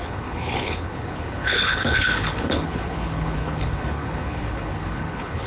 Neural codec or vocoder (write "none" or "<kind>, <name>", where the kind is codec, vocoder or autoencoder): codec, HILCodec